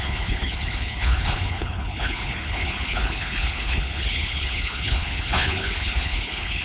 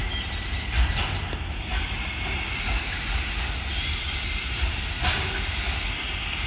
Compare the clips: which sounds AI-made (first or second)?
first